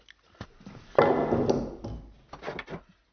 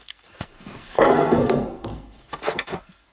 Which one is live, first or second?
first